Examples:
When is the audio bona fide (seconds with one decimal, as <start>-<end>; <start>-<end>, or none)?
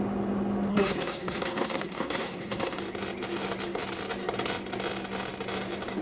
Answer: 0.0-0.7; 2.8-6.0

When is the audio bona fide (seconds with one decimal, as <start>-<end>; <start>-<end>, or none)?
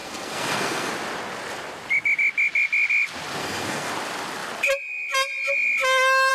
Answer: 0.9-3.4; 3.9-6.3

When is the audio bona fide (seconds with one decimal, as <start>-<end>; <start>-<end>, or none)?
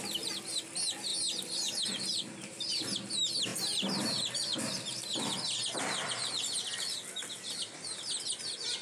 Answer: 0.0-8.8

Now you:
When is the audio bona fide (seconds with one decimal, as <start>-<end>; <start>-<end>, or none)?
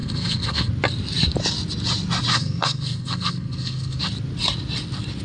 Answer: 0.7-2.3; 4.0-5.2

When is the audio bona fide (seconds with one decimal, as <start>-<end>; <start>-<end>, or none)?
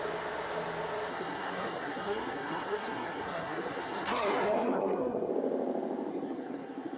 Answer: 0.0-1.1; 5.3-6.1